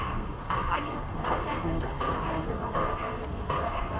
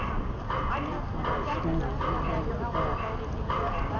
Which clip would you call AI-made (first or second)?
first